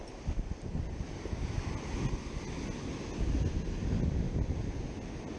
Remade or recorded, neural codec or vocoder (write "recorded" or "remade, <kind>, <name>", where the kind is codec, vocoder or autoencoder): recorded